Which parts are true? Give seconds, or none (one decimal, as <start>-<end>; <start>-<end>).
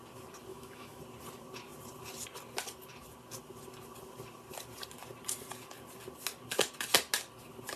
0.0-0.5; 1.0-7.8